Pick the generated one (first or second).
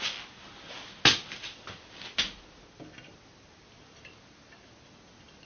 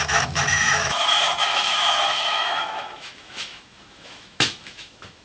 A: second